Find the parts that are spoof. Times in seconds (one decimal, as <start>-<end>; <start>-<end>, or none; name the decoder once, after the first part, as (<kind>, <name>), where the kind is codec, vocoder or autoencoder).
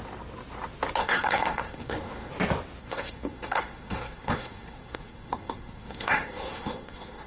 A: 1.0-2.3 (codec, SNAC); 2.8-7.3